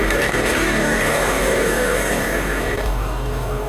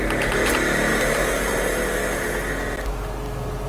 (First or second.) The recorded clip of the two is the second